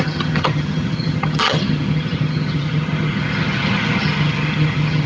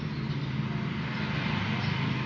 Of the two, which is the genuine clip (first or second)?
second